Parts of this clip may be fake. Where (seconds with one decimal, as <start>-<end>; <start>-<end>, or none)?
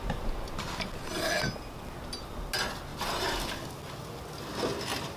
2.9-3.5